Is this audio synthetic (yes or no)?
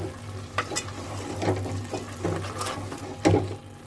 no